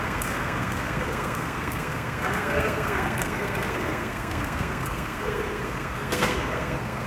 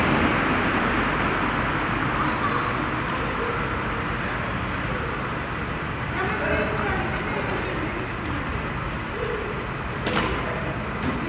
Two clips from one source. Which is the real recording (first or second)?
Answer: second